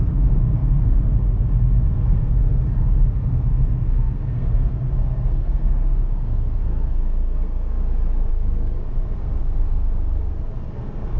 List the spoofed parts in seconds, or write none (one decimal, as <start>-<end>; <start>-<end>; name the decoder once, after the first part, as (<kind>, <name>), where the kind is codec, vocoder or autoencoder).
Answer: 0.0-7.8 (codec, SNAC); 8.3-11.2